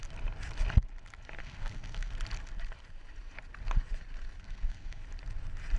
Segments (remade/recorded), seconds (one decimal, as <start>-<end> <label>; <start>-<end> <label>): 0.0-1.4 recorded; 1.4-2.1 remade; 2.1-4.4 recorded; 4.4-5.0 remade; 5.0-5.8 recorded